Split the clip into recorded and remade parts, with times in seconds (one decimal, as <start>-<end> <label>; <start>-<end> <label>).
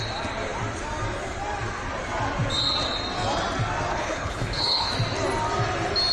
0.0-3.9 recorded; 3.9-4.9 remade; 4.9-6.1 recorded